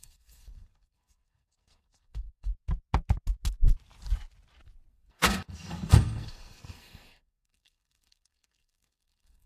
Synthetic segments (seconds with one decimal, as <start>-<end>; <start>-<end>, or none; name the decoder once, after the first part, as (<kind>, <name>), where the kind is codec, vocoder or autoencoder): 0.0-2.5 (codec, SNAC); 4.9-9.5